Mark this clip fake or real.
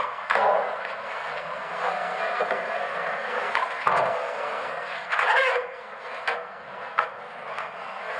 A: fake